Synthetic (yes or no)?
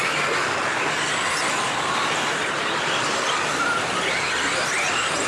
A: no